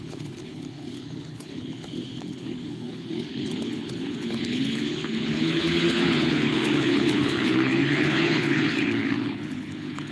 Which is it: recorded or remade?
remade